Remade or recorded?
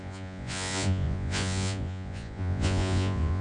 remade